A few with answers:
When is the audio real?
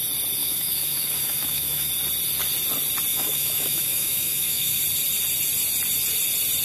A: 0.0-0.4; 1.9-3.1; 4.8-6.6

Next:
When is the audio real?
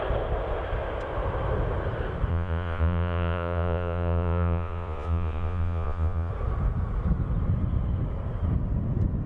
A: 0.0-2.3; 6.3-9.3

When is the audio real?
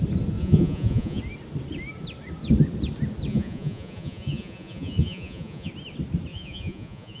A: 0.0-0.4; 1.2-3.3; 5.7-6.3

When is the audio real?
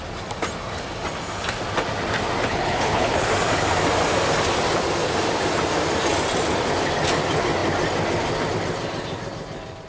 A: 0.0-2.5; 3.3-9.9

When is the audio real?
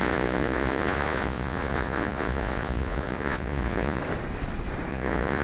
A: 4.0-4.9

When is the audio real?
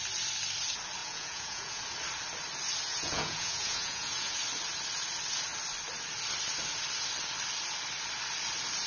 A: 0.0-1.0; 1.8-2.9; 4.4-8.9